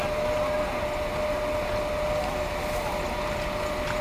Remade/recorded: recorded